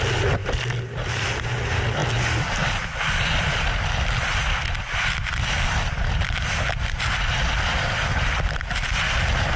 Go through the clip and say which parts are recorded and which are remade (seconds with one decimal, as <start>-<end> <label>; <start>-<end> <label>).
0.0-9.6 recorded